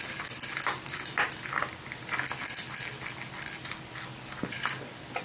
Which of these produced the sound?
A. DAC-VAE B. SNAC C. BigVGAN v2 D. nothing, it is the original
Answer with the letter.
D